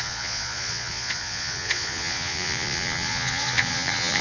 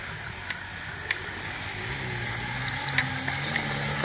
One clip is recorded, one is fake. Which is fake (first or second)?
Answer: first